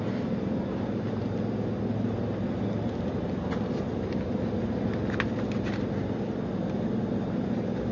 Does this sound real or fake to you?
real